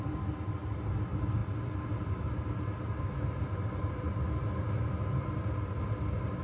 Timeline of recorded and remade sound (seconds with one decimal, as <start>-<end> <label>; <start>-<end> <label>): 0.0-6.4 recorded